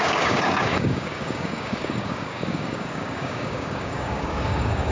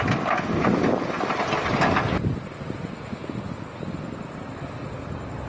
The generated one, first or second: first